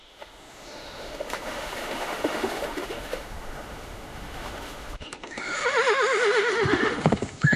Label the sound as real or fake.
fake